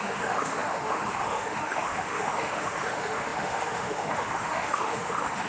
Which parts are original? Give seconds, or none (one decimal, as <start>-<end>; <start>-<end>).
none